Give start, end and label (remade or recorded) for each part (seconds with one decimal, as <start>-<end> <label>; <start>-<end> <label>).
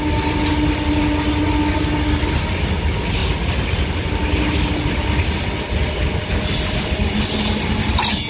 0.0-8.3 recorded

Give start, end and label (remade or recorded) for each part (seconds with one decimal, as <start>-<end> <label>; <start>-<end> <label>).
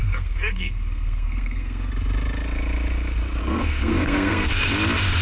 0.0-1.9 remade; 1.9-3.4 recorded; 3.4-4.5 remade; 4.5-5.2 recorded